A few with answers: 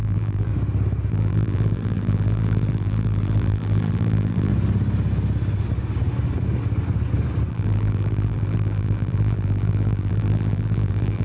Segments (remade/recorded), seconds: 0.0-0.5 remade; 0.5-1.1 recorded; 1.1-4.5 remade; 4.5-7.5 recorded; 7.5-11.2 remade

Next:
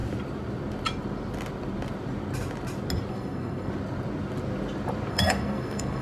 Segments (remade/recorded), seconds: 0.0-3.1 recorded; 3.1-3.7 remade; 3.7-5.1 recorded; 5.1-6.0 remade